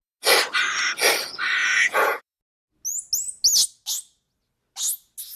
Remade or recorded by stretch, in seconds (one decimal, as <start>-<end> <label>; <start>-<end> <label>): 0.0-1.6 recorded; 1.6-2.2 remade; 2.2-5.4 recorded

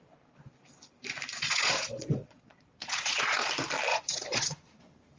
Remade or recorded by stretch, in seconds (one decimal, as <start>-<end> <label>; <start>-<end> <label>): 0.0-1.3 recorded; 1.3-3.5 remade; 3.5-3.9 recorded; 3.9-4.8 remade; 4.8-5.2 recorded

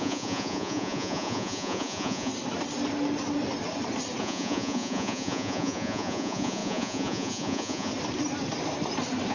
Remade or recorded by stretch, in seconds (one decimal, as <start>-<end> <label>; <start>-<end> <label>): 0.0-2.3 remade; 2.3-4.2 recorded; 4.2-7.9 remade; 7.9-9.3 recorded